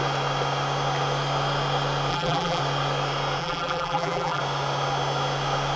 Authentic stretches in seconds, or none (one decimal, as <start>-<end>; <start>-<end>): 0.0-2.1; 2.6-3.4; 4.4-5.8